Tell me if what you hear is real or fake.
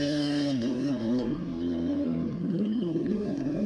fake